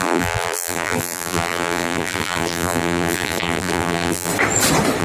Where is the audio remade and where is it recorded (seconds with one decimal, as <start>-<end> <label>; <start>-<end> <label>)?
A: 0.0-4.3 remade; 4.3-5.0 recorded